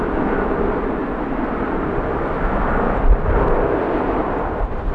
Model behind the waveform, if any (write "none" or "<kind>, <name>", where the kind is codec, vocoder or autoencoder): vocoder, BigVGAN v2